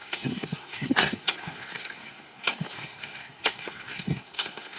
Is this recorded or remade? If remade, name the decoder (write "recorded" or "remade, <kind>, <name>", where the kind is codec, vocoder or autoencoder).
remade, codec, SNAC